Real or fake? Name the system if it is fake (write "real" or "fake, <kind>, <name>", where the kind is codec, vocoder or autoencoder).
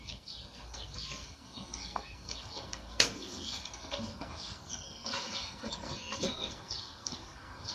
fake, codec, SNAC